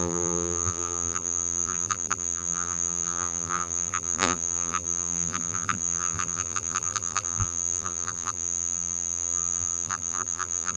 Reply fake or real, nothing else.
fake